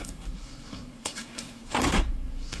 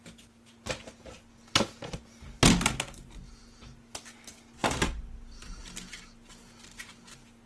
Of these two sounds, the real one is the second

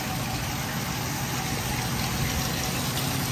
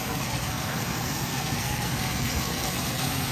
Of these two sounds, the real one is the first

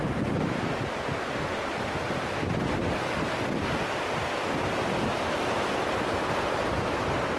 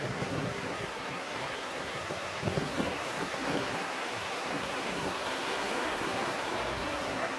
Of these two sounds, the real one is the first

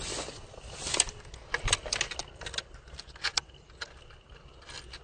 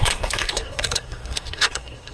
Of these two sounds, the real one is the first